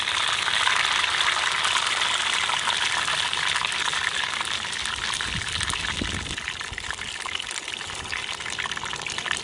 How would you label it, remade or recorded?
recorded